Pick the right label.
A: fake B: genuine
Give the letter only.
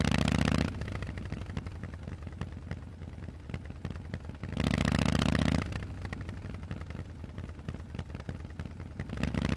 B